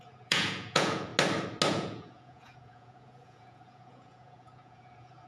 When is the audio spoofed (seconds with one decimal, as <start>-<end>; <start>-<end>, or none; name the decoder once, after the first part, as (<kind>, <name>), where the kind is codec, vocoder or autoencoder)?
0.0-1.1 (vocoder, Vocos); 1.7-5.3